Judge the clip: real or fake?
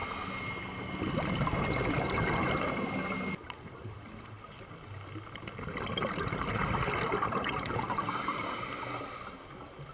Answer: real